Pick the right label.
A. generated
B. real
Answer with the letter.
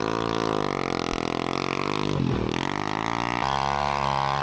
B